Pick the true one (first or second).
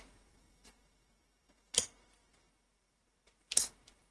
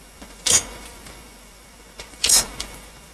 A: first